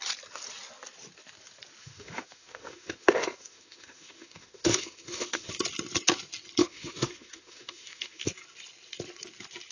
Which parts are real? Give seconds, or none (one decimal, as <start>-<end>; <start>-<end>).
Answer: 0.0-1.8; 5.5-6.6; 8.3-9.7